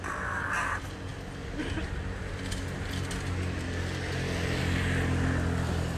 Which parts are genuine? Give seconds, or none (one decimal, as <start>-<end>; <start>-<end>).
0.0-6.0